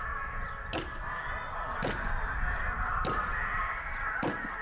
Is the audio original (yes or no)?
yes